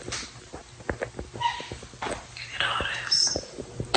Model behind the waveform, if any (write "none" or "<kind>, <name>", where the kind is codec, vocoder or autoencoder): none